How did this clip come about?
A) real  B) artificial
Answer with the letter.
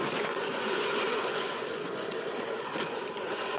B